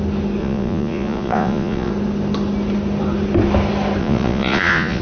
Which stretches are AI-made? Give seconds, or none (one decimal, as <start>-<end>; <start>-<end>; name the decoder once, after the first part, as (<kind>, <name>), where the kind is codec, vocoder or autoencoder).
0.4-1.9 (vocoder, Vocos); 4.0-5.0